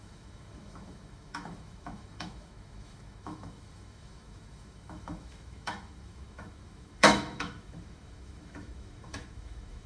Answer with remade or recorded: remade